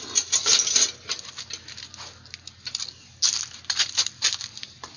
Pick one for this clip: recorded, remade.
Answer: recorded